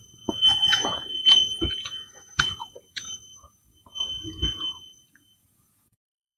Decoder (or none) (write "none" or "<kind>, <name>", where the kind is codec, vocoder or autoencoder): vocoder, Vocos